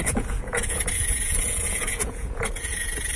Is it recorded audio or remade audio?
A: remade